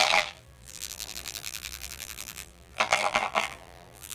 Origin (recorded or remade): remade